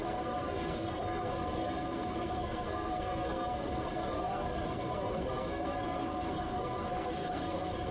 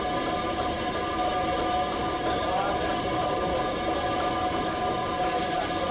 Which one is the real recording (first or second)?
second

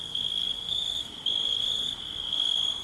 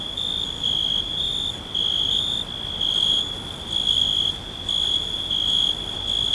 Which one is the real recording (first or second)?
second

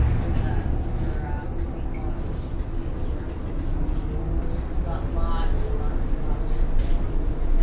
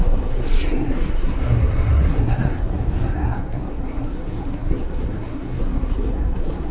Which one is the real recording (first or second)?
first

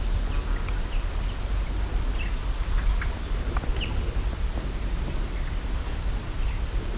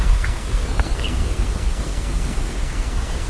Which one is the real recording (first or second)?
first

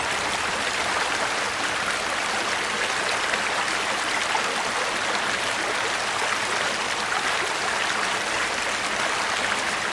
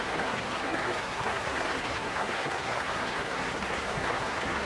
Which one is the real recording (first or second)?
first